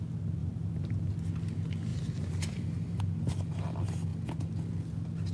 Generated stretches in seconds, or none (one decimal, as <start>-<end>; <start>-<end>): 0.4-1.1; 1.9-3.0